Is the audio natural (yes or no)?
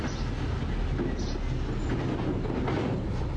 yes